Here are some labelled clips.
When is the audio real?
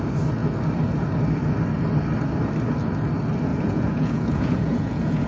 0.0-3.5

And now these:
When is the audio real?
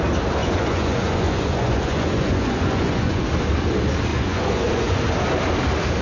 0.0-0.4; 3.2-4.1; 5.0-6.0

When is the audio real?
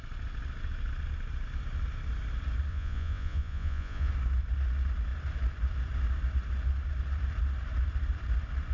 0.0-2.7; 4.1-8.7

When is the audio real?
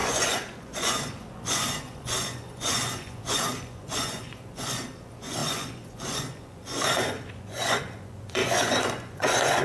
none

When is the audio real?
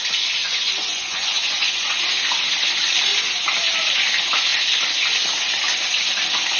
0.0-0.4; 2.0-6.6